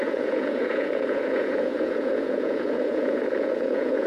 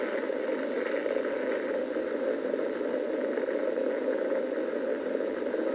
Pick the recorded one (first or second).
second